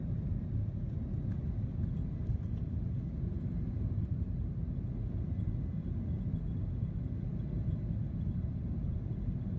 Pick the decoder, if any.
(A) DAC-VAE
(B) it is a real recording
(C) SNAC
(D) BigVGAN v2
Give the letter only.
B